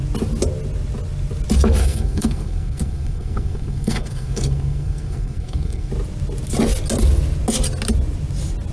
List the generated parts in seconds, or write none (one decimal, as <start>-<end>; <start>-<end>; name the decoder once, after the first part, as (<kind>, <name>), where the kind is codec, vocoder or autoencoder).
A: 1.8-5.9 (codec, SNAC)